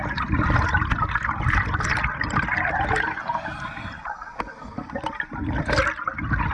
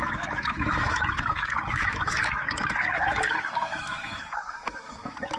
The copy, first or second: second